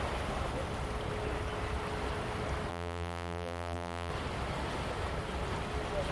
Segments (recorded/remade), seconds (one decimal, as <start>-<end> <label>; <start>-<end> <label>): 0.0-2.7 recorded; 2.7-4.1 remade; 4.1-6.1 recorded